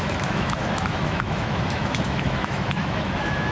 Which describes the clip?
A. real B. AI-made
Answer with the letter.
B